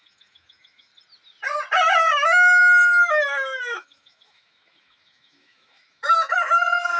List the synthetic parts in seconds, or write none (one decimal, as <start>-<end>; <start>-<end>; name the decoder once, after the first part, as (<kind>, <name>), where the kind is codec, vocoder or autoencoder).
0.0-0.9 (autoencoder, DAC-VAE); 1.9-7.0